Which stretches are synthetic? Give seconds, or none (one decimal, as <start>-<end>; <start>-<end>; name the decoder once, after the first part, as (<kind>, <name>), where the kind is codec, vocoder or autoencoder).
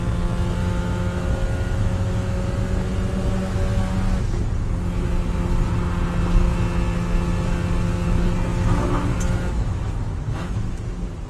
0.6-2.4 (autoencoder, DAC-VAE); 8.5-10.8